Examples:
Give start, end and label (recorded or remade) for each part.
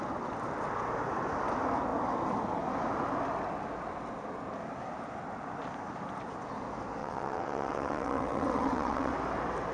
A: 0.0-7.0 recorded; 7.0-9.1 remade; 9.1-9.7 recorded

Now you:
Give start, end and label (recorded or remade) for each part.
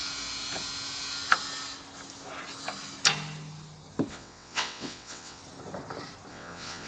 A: 0.0-4.1 recorded; 4.1-5.4 remade; 5.4-6.3 recorded; 6.3-6.9 remade